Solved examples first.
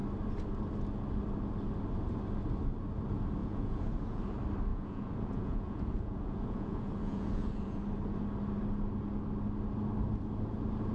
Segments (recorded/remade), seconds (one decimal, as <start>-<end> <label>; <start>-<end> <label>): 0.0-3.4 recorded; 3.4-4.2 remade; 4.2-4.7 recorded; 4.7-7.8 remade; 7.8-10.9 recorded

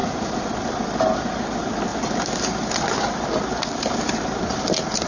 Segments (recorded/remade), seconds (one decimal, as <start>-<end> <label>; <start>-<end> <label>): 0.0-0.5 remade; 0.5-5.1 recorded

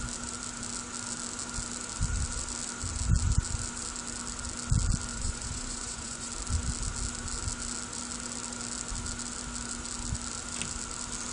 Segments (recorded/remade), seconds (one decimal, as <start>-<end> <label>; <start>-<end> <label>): 0.0-5.1 recorded; 5.1-6.3 remade; 6.3-11.3 recorded